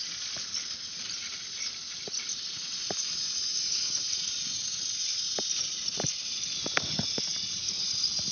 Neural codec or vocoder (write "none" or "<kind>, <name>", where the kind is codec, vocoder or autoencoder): none